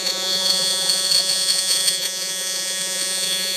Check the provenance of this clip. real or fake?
fake